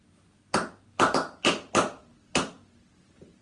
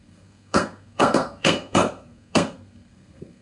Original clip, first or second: first